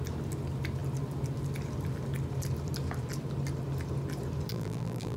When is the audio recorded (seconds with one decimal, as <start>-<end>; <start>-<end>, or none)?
0.0-4.5